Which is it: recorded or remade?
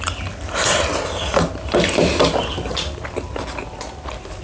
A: recorded